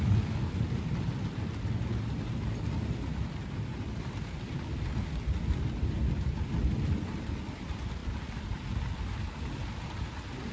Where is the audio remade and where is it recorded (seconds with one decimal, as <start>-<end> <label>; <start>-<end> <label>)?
0.0-10.5 recorded